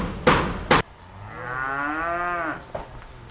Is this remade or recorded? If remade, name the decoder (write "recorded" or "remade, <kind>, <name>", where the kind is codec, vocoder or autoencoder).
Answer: recorded